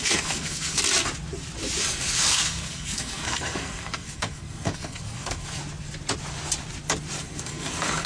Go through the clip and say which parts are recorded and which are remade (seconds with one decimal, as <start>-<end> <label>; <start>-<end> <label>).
0.0-0.8 remade; 0.8-1.8 recorded; 1.8-5.6 remade; 5.6-7.2 recorded; 7.2-8.1 remade